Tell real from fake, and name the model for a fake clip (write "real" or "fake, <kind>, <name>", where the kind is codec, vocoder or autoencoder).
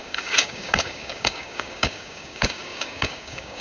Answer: fake, codec, DAC